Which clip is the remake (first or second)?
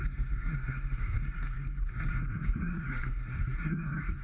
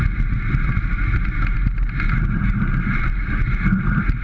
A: first